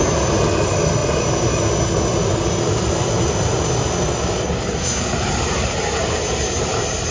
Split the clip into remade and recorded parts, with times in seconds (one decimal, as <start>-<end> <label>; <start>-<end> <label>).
0.0-7.1 recorded